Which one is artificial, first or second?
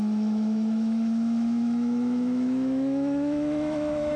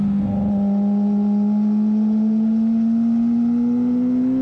first